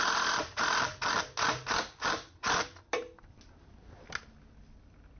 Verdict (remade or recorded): recorded